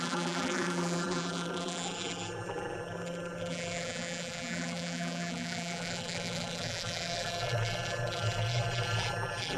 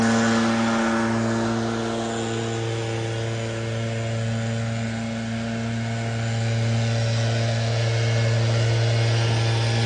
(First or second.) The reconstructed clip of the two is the first